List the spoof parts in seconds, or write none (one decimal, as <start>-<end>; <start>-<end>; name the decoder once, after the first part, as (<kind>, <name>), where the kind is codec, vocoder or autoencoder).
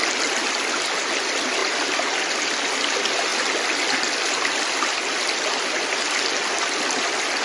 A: none